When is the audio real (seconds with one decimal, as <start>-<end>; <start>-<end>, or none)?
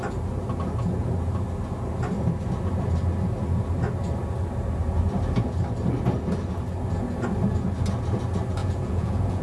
0.0-8.6